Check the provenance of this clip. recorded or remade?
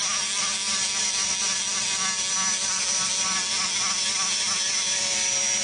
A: recorded